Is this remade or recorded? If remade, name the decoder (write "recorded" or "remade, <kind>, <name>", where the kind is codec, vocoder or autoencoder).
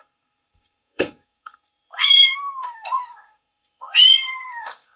remade, codec, SNAC